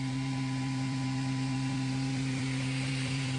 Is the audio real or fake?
fake